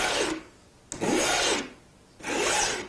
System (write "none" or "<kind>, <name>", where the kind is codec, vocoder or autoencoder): none